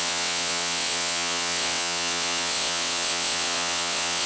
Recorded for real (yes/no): no